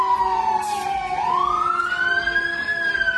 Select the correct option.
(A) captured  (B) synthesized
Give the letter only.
A